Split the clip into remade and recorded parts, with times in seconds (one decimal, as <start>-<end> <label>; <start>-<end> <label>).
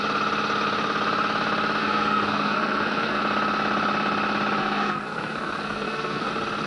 0.0-1.8 recorded; 1.8-3.2 remade; 3.2-4.6 recorded; 4.6-6.3 remade; 6.3-6.7 recorded